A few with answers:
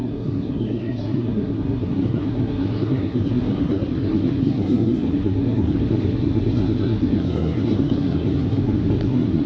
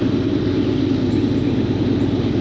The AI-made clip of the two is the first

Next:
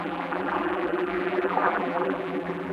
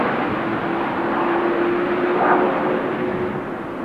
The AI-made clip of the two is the first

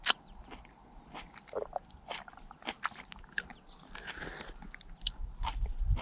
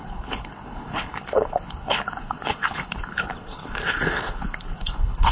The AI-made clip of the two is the second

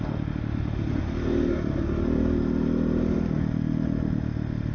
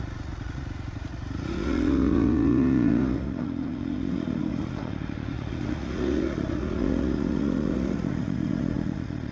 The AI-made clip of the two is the second